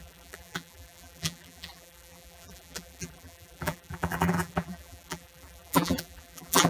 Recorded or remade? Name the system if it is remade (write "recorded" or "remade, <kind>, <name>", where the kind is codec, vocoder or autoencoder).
remade, vocoder, BigVGAN v2